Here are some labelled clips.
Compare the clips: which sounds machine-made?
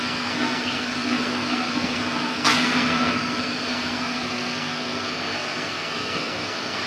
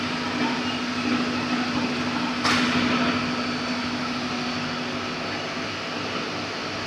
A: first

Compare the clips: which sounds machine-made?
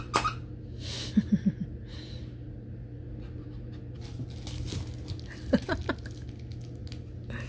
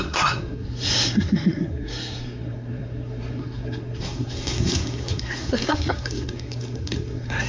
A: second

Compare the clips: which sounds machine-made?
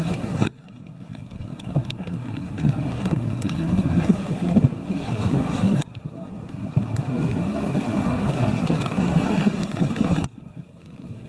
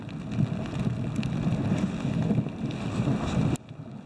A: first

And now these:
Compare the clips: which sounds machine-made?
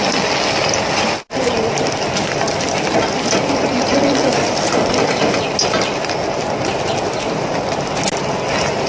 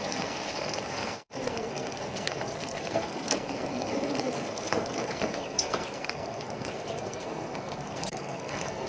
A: second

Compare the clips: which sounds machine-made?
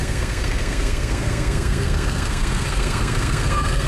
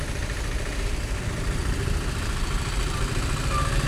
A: first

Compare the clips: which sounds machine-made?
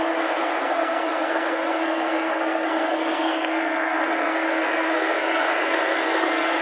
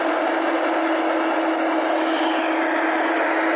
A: first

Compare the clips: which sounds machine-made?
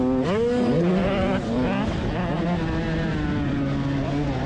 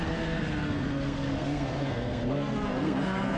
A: second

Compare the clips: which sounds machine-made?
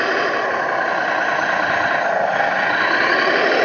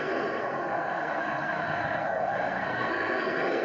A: second